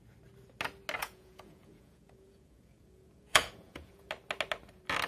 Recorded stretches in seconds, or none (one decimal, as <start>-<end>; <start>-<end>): 0.0-1.0; 4.1-5.1